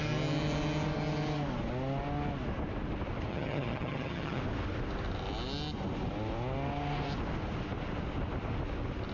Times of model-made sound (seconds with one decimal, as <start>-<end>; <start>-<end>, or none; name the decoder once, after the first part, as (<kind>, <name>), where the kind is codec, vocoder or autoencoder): 3.3-4.4 (vocoder, HiFi-GAN)